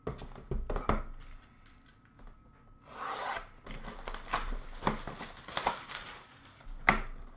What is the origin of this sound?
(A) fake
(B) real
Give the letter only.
B